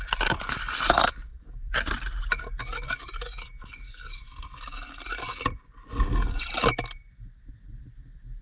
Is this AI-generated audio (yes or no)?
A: no